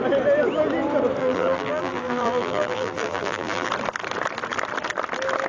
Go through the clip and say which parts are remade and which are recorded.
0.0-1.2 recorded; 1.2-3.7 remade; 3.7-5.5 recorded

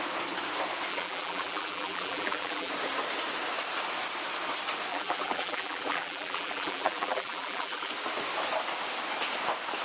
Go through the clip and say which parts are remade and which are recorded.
0.0-0.9 recorded; 0.9-2.7 remade; 2.7-4.9 recorded; 4.9-7.9 remade; 7.9-9.8 recorded

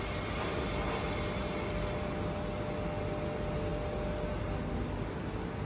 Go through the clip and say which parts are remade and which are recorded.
0.0-5.7 recorded

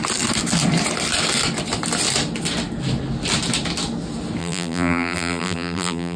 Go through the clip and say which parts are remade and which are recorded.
0.0-4.4 recorded; 4.4-6.2 remade

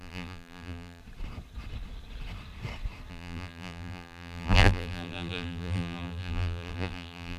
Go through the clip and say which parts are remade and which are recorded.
0.0-1.0 remade; 1.0-3.1 recorded; 3.1-7.4 remade

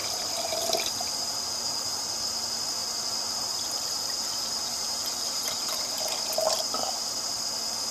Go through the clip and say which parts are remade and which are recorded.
0.0-2.1 remade; 2.1-2.8 recorded; 2.8-6.9 remade; 6.9-7.9 recorded